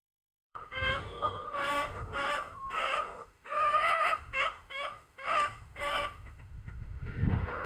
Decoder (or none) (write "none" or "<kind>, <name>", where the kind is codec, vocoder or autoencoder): autoencoder, DAC-VAE